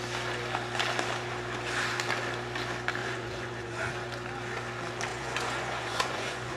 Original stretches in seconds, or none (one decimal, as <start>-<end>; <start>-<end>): 0.0-3.0; 3.9-5.1

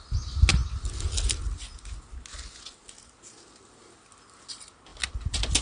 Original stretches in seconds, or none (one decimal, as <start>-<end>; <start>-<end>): 0.0-5.6

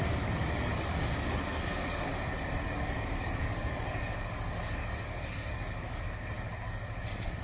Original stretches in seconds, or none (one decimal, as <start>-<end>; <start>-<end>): 2.1-2.6

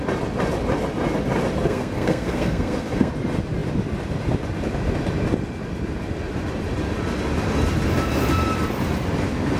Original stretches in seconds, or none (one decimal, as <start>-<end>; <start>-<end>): 0.0-1.6; 3.1-9.6

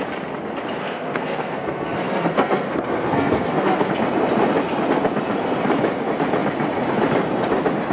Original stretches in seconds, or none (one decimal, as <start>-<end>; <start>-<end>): 0.0-0.8; 3.9-7.9